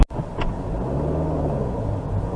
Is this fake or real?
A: real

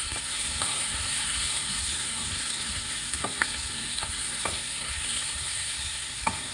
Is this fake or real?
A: fake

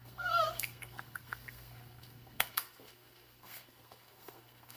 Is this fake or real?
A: fake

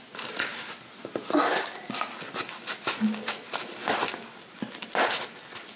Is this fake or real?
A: real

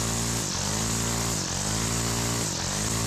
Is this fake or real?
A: real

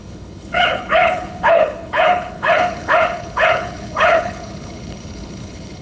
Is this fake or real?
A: fake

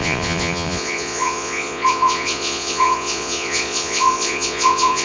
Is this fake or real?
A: fake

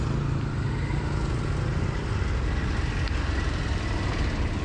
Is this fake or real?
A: real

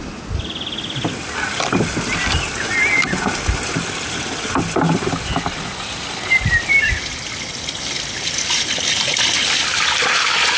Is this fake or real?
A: real